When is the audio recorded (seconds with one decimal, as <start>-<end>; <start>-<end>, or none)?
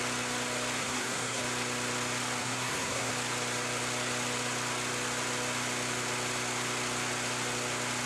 0.0-0.8; 1.4-2.4; 3.1-8.1